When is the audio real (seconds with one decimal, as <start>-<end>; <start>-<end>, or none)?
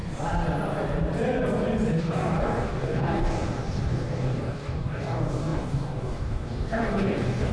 0.0-2.0